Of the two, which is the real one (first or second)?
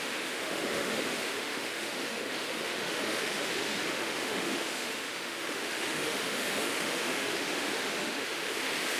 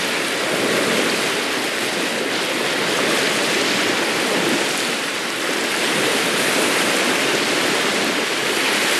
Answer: second